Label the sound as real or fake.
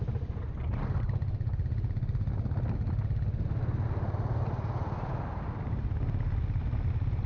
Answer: real